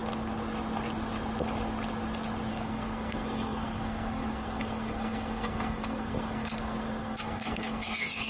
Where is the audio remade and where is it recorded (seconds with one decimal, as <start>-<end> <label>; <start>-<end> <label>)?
0.0-2.5 recorded; 2.5-8.3 remade